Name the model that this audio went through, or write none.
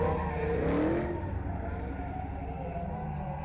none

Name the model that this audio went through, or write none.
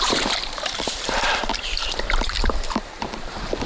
vocoder, BigVGAN v2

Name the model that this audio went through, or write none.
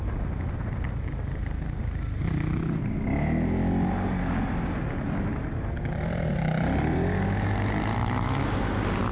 none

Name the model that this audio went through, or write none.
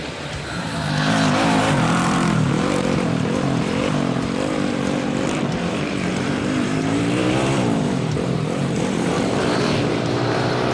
vocoder, BigVGAN v2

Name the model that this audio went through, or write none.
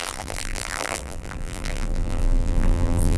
vocoder, BigVGAN v2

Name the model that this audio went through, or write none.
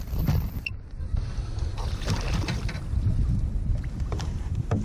vocoder, BigVGAN v2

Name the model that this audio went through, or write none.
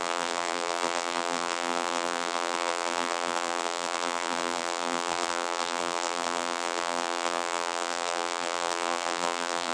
vocoder, BigVGAN v2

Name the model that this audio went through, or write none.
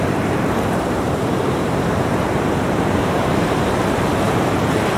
vocoder, BigVGAN v2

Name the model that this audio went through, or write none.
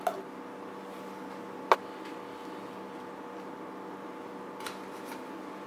none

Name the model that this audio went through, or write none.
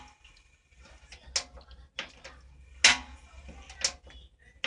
none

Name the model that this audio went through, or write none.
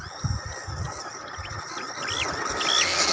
none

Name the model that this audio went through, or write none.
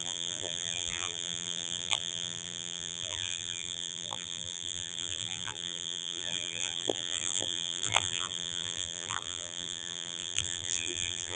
vocoder, BigVGAN v2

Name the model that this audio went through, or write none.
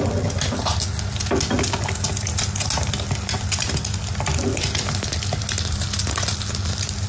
none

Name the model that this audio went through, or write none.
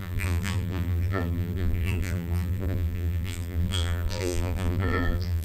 vocoder, BigVGAN v2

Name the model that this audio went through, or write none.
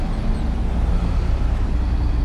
none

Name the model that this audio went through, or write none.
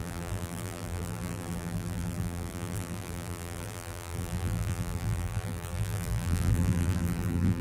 vocoder, BigVGAN v2